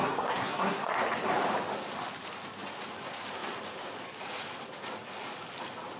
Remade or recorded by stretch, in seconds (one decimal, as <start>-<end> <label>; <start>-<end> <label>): 0.0-0.9 remade; 0.9-6.0 recorded